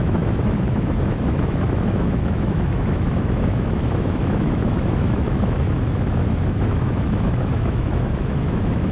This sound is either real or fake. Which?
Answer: fake